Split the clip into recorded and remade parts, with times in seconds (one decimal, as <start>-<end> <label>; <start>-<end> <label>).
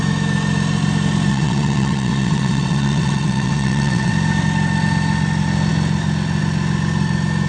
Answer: 0.0-1.3 recorded; 1.3-4.1 remade; 4.1-7.5 recorded